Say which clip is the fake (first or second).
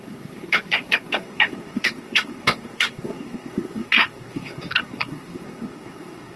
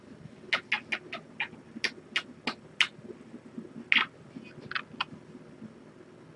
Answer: first